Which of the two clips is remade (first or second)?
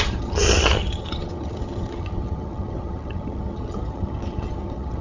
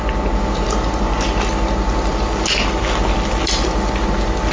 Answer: first